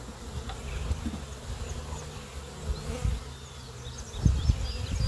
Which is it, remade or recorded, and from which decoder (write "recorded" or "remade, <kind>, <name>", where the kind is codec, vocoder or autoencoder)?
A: recorded